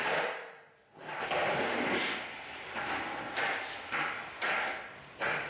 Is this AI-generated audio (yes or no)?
no